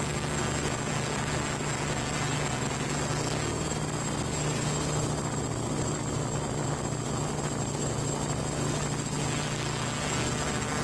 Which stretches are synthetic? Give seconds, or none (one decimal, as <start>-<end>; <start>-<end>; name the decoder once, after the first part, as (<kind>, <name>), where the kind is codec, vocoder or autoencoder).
none